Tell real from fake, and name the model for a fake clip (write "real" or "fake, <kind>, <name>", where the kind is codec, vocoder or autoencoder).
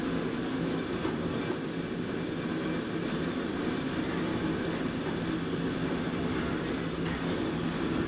real